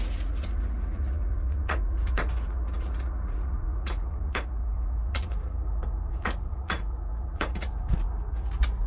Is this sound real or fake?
fake